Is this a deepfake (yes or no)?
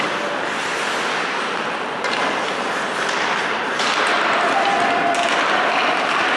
no